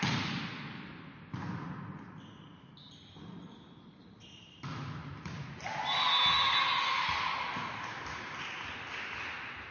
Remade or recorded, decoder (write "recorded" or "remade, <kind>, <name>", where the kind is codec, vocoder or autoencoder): recorded